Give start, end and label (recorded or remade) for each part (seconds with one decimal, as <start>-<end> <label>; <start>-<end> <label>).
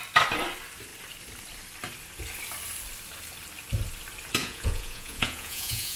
0.0-4.4 recorded; 4.4-6.0 remade